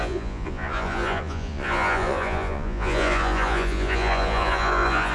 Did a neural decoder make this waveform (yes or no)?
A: yes